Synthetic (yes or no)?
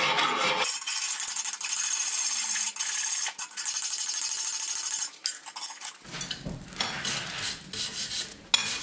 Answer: no